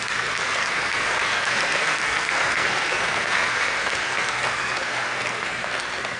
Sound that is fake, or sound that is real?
fake